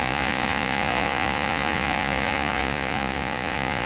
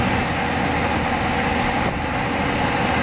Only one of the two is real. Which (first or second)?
second